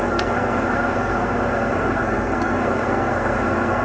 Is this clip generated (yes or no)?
yes